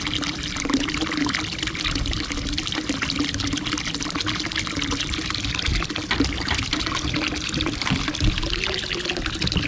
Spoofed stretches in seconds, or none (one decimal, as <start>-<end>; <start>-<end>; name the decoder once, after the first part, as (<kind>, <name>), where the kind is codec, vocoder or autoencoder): none